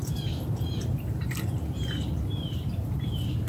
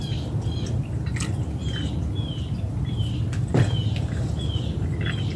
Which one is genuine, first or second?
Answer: second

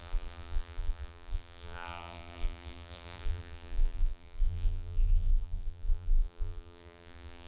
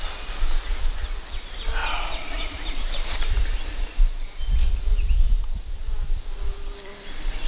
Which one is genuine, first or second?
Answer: second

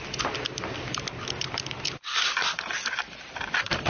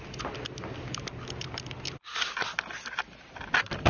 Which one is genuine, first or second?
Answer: second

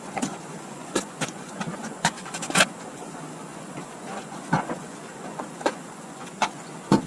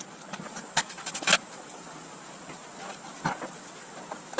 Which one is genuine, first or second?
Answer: second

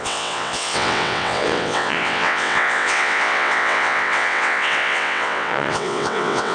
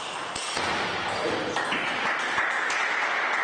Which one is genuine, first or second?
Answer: second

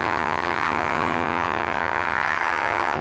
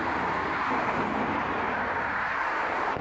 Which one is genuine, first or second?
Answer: second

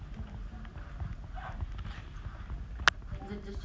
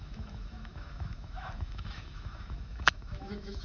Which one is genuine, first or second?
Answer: first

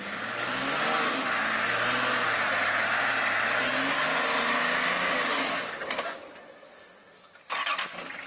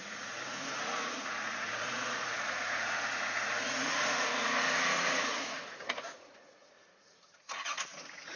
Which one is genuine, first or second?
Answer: first